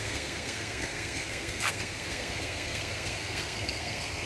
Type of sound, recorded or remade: remade